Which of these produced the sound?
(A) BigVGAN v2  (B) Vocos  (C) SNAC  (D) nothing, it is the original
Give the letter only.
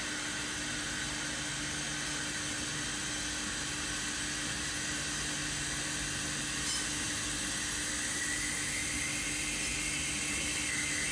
D